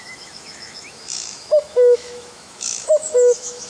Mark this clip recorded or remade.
remade